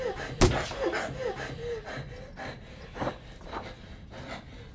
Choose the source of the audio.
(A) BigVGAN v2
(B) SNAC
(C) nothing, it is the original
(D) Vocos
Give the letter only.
C